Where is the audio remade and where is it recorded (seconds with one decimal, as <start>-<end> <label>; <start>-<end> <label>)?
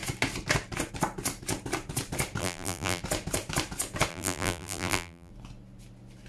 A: 0.0-2.4 recorded; 2.4-3.0 remade; 3.0-4.1 recorded; 4.1-5.3 remade; 5.3-6.3 recorded